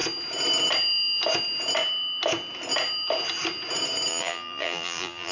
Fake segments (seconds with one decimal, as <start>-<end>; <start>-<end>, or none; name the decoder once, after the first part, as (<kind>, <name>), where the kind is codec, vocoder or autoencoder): 4.1-5.3 (vocoder, BigVGAN v2)